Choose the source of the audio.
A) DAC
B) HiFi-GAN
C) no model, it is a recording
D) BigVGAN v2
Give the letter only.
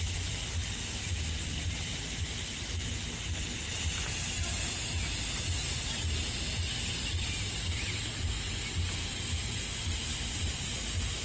C